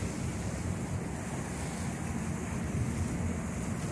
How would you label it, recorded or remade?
recorded